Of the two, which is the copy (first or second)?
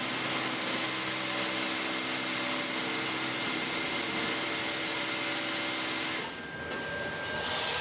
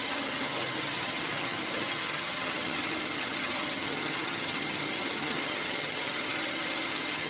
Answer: second